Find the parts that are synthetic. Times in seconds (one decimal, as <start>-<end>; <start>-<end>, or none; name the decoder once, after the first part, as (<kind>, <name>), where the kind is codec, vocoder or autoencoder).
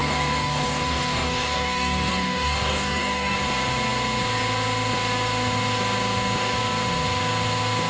0.0-3.4 (codec, DAC)